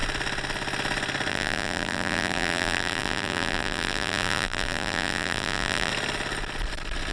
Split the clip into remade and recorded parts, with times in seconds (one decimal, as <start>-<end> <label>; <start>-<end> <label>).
0.0-1.3 recorded; 1.3-5.9 remade; 5.9-7.1 recorded